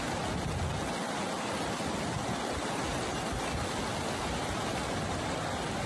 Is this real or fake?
real